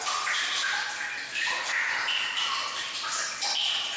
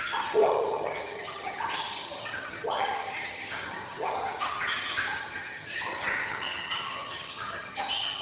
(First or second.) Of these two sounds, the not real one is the second